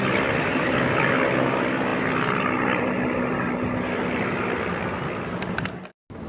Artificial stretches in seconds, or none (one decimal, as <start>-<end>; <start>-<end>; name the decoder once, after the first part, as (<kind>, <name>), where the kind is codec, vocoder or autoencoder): none